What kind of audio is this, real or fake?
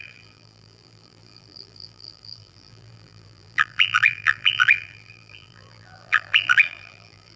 fake